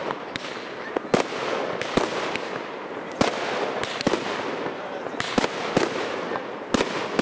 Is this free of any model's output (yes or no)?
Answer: yes